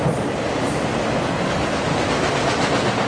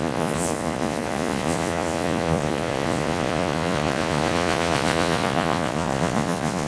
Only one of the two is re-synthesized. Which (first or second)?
second